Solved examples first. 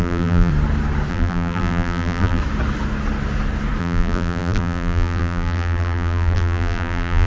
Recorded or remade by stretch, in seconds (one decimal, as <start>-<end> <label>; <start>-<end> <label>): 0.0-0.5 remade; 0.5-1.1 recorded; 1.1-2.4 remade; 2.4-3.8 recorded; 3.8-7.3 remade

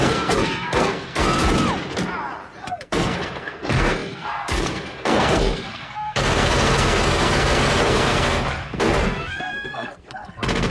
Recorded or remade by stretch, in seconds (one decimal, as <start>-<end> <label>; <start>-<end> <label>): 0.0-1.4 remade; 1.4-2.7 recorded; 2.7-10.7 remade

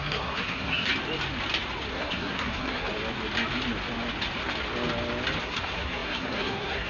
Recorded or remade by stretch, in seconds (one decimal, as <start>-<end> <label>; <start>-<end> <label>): 0.0-0.9 remade; 0.9-1.9 recorded; 1.9-2.9 remade; 2.9-5.4 recorded; 5.4-6.9 remade

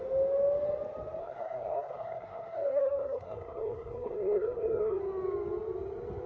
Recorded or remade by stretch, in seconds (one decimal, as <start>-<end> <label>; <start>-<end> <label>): 0.0-1.2 recorded; 1.2-5.0 remade; 5.0-6.3 recorded

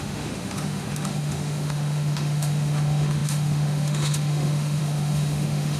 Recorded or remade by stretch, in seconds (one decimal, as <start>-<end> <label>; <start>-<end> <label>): 0.0-5.8 remade

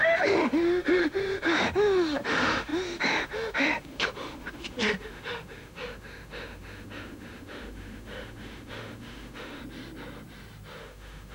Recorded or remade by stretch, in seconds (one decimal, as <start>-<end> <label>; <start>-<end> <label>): 0.0-9.6 remade; 9.6-10.8 recorded; 10.8-11.3 remade

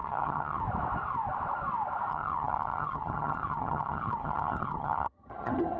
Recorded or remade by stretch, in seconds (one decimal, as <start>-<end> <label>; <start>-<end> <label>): 0.0-0.6 remade; 0.6-2.1 recorded; 2.1-5.8 remade

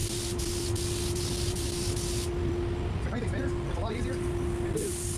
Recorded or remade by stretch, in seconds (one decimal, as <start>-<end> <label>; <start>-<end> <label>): 0.0-5.2 recorded